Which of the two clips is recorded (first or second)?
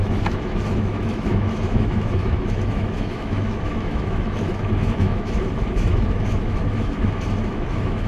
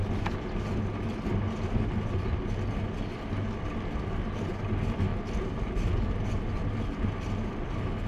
second